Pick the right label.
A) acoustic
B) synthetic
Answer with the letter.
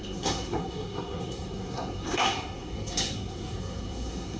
B